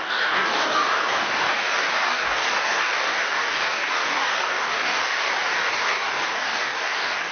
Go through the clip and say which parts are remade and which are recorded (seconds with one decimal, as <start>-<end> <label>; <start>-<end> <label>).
0.0-7.3 remade